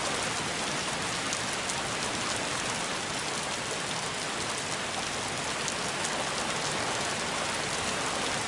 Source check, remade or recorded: recorded